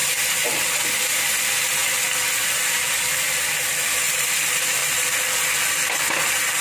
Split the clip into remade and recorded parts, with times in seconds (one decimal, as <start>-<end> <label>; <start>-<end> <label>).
0.0-0.7 remade; 0.7-4.8 recorded; 4.8-5.5 remade; 5.5-6.6 recorded